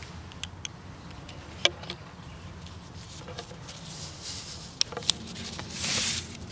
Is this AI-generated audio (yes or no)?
no